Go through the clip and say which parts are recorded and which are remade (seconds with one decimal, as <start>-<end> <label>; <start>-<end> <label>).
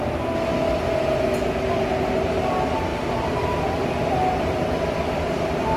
0.0-2.9 recorded; 2.9-5.8 remade